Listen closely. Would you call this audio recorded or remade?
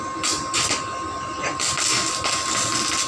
recorded